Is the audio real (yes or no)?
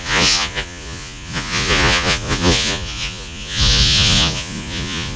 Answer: no